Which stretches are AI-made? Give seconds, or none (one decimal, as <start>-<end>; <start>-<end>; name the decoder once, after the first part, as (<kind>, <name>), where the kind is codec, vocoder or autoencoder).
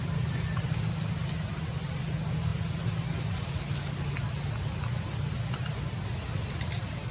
none